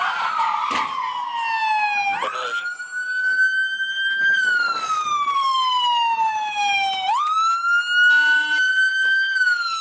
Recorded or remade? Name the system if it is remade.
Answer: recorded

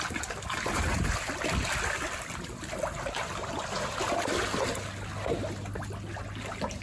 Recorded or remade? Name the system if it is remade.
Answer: recorded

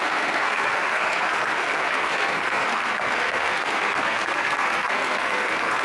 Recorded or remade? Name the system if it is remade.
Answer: remade, codec, SNAC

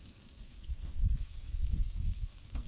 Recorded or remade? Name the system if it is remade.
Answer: remade, codec, SNAC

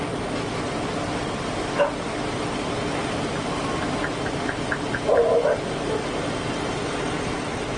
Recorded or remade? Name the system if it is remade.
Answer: recorded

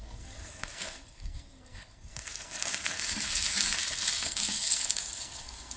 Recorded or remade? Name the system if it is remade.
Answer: remade, codec, SNAC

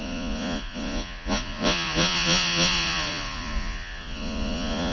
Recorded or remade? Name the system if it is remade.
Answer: remade, vocoder, Vocos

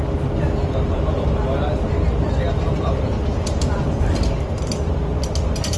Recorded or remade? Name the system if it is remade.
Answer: recorded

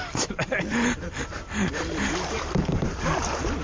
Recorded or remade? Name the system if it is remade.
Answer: remade, vocoder, BigVGAN v2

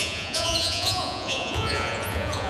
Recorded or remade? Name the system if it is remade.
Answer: remade, vocoder, Vocos